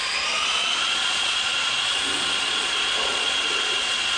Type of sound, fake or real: fake